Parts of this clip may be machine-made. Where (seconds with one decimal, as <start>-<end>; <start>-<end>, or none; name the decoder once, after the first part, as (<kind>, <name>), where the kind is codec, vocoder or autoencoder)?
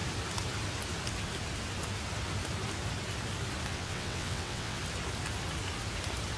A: 3.7-4.8 (vocoder, WaveNeXt)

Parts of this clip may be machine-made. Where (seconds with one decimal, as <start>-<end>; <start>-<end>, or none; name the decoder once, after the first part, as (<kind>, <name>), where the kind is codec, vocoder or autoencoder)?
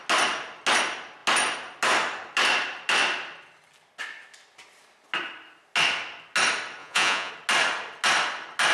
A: 6.8-7.3 (vocoder, Vocos)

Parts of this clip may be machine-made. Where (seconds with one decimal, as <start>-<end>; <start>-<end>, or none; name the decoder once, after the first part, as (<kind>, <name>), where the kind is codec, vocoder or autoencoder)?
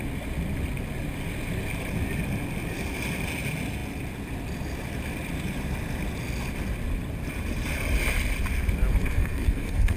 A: 9.0-10.0 (codec, SNAC)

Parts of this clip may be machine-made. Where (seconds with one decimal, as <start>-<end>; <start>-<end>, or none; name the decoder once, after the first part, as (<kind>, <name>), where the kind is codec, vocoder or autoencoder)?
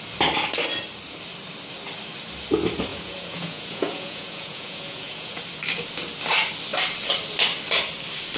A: 2.9-5.4 (vocoder, Vocos)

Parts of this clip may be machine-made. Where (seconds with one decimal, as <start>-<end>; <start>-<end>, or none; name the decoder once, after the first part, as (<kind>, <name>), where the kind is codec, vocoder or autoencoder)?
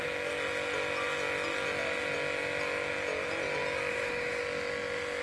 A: 3.9-4.4 (autoencoder, DAC-VAE)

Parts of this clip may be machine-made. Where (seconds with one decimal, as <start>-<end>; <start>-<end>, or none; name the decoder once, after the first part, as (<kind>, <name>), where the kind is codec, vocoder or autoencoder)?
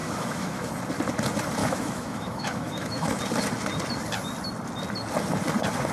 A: 0.0-0.7 (autoencoder, DAC-VAE); 1.6-3.2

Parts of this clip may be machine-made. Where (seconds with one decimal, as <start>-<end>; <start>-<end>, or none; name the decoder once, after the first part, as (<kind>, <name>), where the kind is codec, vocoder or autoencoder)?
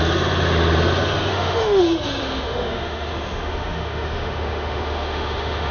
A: 1.3-1.8 (autoencoder, DAC-VAE); 2.2-5.7